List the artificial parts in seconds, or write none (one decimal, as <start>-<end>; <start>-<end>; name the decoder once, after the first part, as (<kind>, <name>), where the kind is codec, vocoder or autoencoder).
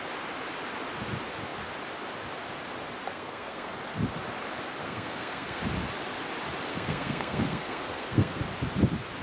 3.1-3.7 (codec, SNAC); 4.8-5.6; 6.7-8.4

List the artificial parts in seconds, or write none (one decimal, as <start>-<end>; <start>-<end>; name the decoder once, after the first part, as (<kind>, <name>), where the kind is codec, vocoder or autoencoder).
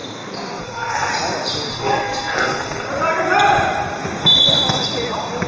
0.6-1.1 (codec, SNAC); 1.7-2.9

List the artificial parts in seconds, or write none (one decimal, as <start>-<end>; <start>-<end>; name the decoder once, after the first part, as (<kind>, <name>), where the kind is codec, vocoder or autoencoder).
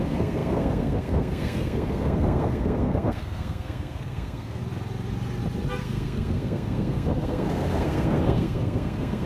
0.0-4.6 (codec, SNAC); 5.8-9.3